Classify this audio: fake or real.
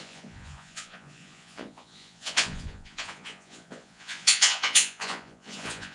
fake